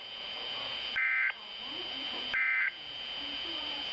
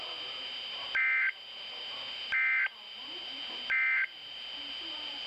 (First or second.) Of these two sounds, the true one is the second